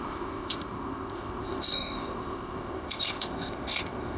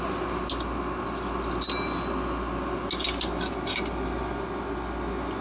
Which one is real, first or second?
second